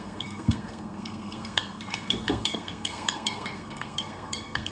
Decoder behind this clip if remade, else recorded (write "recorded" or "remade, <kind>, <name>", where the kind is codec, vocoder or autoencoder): remade, codec, SNAC